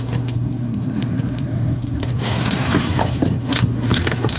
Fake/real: fake